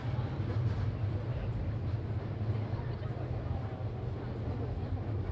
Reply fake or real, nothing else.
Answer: real